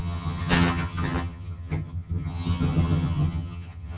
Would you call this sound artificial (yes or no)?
yes